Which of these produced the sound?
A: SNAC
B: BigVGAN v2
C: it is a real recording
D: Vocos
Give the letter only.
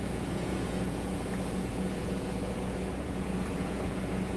D